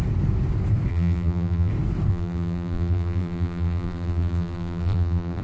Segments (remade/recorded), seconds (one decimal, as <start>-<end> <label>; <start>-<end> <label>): 0.0-0.9 recorded; 0.9-1.7 remade; 1.7-2.1 recorded; 2.1-5.4 remade